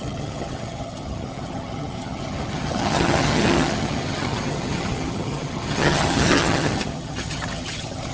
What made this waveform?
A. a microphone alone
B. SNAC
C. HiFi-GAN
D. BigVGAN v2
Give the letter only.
C